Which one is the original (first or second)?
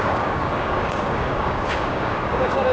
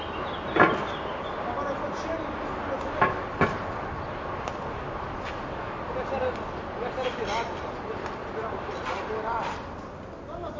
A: second